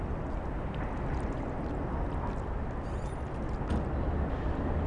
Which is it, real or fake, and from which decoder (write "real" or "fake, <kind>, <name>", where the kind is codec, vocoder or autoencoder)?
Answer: real